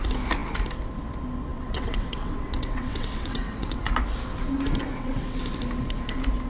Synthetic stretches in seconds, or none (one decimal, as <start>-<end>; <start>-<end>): 1.5-4.0; 4.9-5.4